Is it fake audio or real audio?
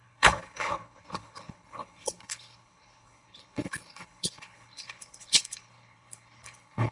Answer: fake